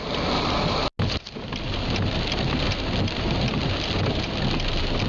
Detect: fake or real real